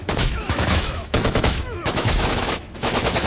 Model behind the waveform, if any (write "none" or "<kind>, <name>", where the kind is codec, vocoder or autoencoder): autoencoder, DAC-VAE